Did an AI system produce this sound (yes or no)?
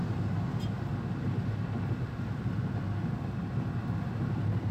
no